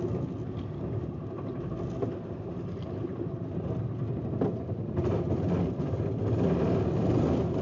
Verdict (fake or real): real